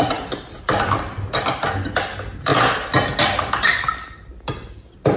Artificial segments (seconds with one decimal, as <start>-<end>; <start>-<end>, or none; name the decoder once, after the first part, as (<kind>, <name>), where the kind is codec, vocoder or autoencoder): none